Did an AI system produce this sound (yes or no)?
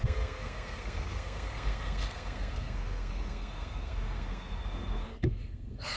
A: yes